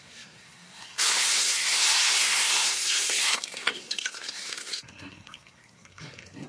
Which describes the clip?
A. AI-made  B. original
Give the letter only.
A